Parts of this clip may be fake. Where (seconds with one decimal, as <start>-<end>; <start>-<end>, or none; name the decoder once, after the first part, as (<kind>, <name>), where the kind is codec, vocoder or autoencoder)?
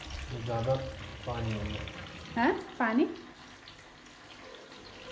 none